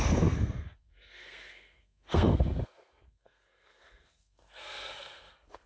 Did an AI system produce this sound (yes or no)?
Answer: yes